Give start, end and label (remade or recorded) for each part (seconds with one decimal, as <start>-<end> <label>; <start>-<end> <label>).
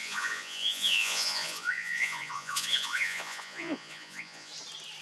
0.0-4.5 remade; 4.5-5.0 recorded